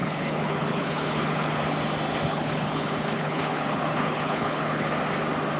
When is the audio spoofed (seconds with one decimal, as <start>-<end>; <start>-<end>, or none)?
0.0-1.6; 2.3-4.9